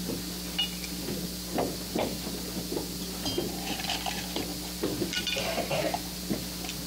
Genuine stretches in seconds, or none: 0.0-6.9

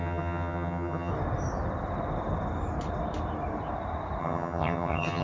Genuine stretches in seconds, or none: 1.1-4.2

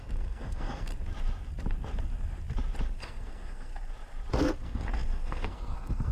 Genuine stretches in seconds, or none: 0.9-3.0; 3.7-4.3